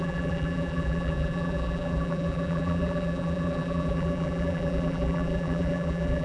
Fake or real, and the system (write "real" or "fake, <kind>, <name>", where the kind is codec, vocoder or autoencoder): fake, vocoder, BigVGAN v2